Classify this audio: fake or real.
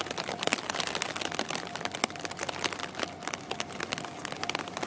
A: real